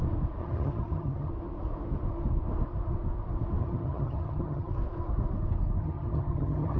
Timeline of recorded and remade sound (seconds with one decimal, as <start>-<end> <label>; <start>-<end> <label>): 0.0-0.4 recorded; 0.4-1.3 remade; 1.3-3.6 recorded; 3.6-4.7 remade; 4.7-5.8 recorded; 5.8-6.8 remade

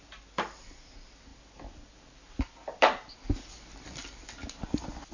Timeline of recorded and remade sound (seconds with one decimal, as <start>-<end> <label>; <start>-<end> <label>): 0.0-5.1 recorded

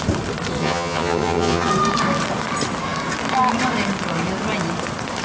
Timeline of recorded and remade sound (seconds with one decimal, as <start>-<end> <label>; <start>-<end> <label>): 0.0-0.6 recorded; 0.6-1.7 remade; 1.7-5.2 recorded

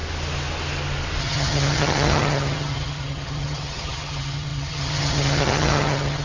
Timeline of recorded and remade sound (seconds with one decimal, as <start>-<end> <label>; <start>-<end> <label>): 0.0-1.2 recorded; 1.2-6.2 remade

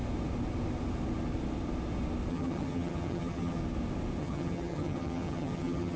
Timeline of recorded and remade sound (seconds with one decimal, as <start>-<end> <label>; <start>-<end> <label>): 0.0-2.3 recorded; 2.3-3.6 remade; 3.6-4.2 recorded; 4.2-6.0 remade